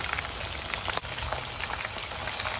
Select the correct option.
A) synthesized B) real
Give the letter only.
B